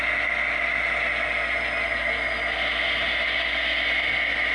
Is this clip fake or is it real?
real